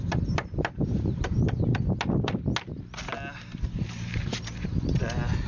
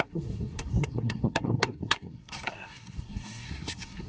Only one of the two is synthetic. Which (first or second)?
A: second